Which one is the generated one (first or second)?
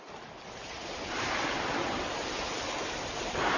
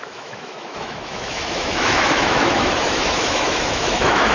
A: second